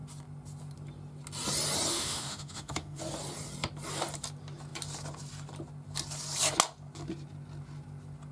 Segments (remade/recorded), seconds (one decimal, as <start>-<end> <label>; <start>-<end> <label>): 0.0-1.9 recorded; 1.9-3.0 remade; 3.0-8.3 recorded